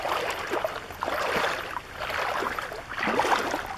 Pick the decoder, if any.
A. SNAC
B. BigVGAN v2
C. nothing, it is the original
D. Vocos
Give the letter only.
C